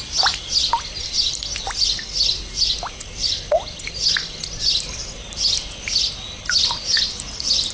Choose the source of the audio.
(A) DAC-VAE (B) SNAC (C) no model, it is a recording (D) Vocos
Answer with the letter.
C